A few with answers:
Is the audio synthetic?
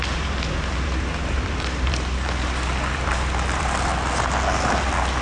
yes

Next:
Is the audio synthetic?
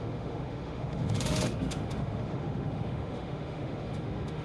yes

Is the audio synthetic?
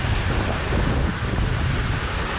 no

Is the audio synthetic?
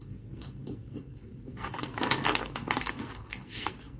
yes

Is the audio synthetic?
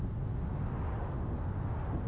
no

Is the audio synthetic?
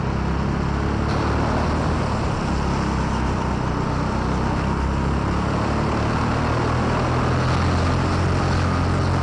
no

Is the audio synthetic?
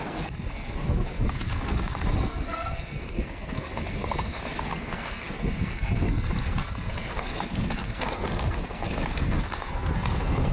yes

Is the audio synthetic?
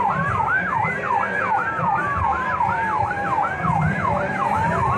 yes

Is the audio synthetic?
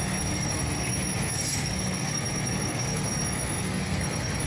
yes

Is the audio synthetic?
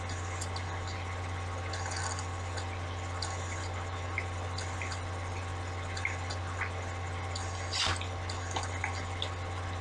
no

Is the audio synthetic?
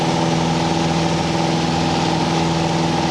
no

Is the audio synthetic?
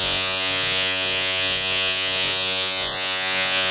yes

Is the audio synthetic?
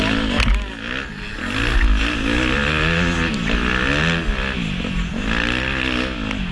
no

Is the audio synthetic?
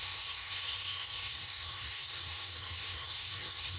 yes